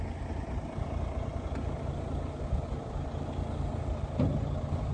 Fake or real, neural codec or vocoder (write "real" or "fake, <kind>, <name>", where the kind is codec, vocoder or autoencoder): real